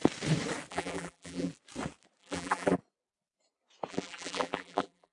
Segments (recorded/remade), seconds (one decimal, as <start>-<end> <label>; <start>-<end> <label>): 0.0-0.7 recorded; 0.7-1.5 remade; 1.5-2.2 recorded; 2.2-2.8 remade; 2.8-3.9 recorded; 3.9-5.1 remade